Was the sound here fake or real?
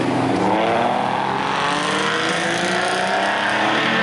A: real